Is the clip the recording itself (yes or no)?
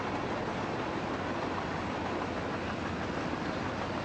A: yes